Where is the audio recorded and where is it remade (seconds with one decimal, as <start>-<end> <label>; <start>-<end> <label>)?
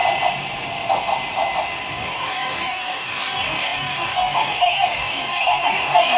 0.0-1.9 recorded; 1.9-6.2 remade